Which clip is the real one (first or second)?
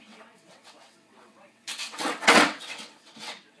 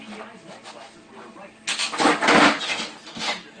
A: second